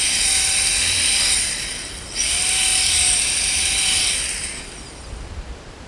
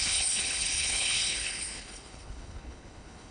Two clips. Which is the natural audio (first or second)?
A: first